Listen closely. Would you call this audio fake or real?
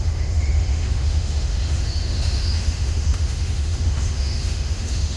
fake